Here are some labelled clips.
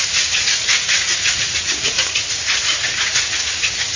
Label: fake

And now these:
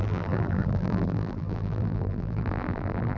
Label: fake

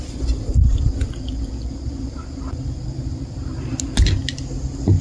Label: real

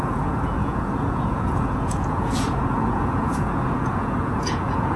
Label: fake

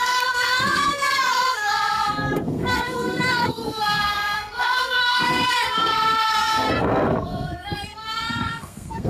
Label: fake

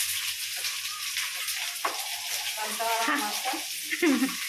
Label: real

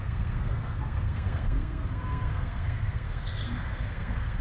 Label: fake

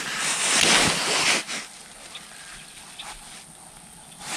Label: real